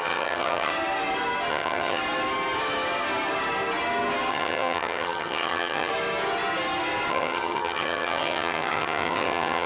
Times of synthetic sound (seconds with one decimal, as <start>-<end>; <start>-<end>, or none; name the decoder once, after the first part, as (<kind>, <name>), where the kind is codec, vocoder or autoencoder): 0.0-0.7 (vocoder, HiFi-GAN); 1.5-2.0; 4.3-5.9; 7.1-9.7